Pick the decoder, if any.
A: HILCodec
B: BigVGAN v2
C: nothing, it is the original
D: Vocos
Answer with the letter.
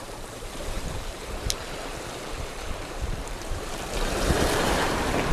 B